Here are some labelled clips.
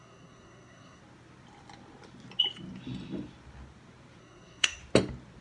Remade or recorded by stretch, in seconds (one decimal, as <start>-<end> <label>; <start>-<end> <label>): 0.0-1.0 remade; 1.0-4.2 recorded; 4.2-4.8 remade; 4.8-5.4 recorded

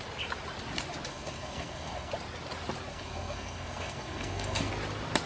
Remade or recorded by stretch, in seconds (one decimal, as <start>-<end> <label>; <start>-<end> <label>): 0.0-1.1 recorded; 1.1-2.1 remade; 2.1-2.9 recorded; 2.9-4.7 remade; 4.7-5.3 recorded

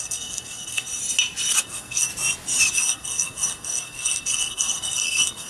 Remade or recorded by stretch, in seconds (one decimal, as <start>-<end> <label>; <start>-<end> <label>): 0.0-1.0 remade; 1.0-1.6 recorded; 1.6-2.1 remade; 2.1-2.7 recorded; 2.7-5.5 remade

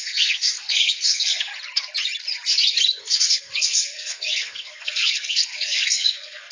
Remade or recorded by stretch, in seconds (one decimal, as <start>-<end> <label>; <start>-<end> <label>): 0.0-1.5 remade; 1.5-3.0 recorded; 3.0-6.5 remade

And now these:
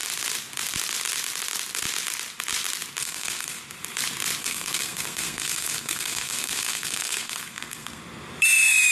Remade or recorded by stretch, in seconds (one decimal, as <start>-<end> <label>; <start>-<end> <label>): 0.0-3.0 recorded; 3.0-3.6 remade; 3.6-4.4 recorded; 4.4-8.0 remade; 8.0-8.9 recorded